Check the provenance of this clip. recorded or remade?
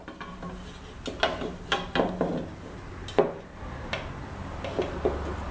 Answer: recorded